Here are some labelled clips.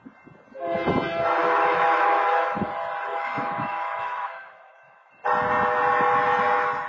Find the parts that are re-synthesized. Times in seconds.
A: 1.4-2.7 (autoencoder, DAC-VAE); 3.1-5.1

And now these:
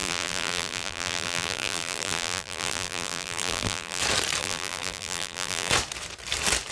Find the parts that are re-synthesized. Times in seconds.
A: 0.0-4.0 (vocoder, BigVGAN v2); 4.4-5.7

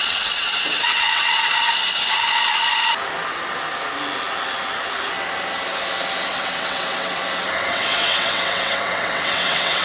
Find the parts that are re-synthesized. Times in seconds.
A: 0.0-1.5 (vocoder, WaveNeXt); 6.3-7.2; 7.7-9.8

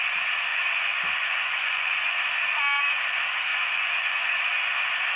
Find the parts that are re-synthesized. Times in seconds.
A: 0.5-2.2 (vocoder, Vocos); 3.5-4.4